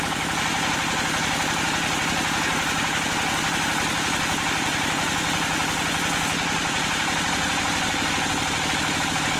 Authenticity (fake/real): real